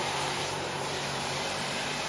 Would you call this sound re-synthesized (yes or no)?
yes